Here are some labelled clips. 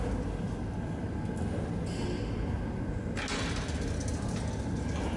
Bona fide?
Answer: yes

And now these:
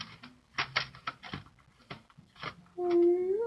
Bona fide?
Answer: yes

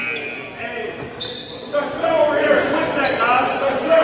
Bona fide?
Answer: yes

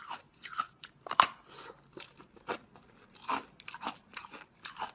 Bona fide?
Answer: yes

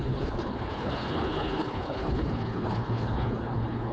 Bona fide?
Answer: no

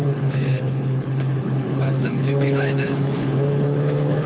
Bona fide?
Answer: no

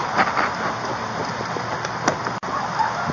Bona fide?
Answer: yes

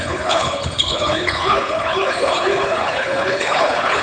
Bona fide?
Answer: no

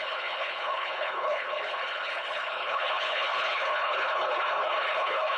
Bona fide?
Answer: no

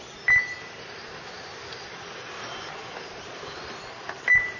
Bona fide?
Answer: yes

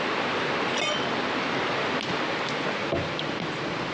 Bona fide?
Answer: yes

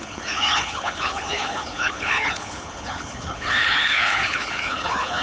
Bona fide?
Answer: no